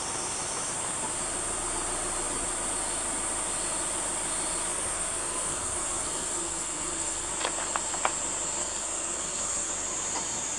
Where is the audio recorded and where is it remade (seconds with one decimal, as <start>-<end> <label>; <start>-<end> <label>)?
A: 0.0-4.7 recorded; 4.7-7.3 remade; 7.3-8.6 recorded; 8.6-9.7 remade; 9.7-10.6 recorded